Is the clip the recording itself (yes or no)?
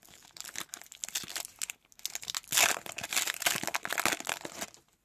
yes